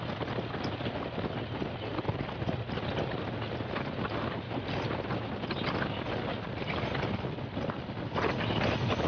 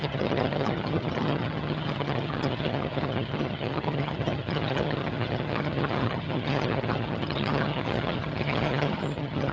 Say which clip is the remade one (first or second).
second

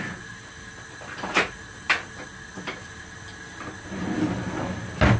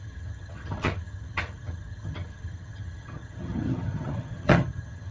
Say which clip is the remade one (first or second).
second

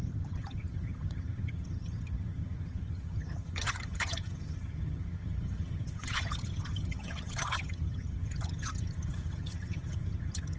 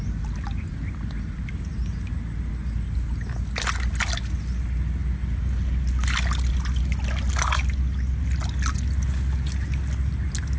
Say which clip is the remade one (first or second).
first